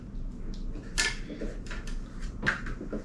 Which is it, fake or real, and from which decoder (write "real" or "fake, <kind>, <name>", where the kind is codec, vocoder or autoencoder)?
real